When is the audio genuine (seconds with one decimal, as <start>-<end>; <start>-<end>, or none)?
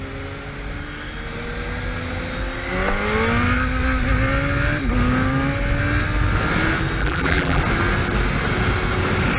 0.0-7.0; 7.6-9.4